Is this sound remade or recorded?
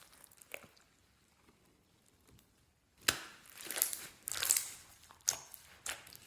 recorded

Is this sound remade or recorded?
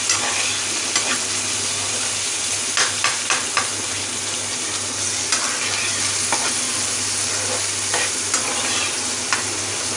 recorded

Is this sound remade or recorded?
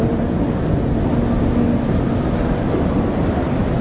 recorded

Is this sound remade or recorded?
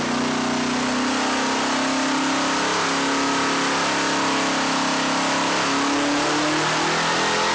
recorded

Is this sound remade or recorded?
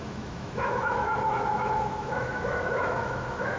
remade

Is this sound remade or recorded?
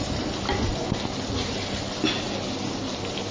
recorded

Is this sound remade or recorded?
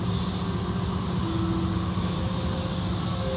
recorded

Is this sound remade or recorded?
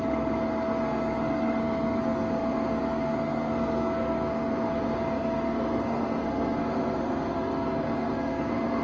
remade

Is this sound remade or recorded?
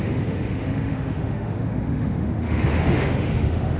remade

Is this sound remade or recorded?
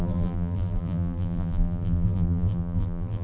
remade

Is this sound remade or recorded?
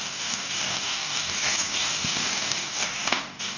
remade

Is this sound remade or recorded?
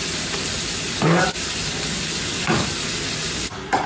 recorded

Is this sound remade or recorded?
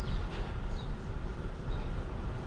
recorded